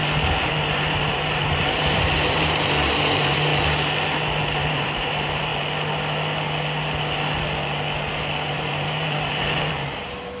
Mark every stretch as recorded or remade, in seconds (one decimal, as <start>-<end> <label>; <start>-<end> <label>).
0.0-0.5 recorded; 0.5-3.5 remade; 3.5-4.6 recorded; 4.6-5.5 remade; 5.5-8.5 recorded; 8.5-10.4 remade